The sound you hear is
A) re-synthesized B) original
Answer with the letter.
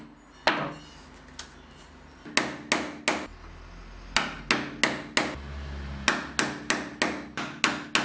B